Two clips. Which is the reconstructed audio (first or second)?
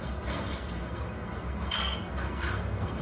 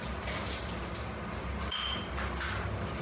first